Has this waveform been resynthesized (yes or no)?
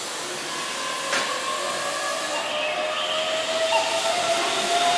no